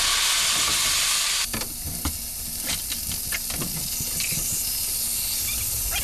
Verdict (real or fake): real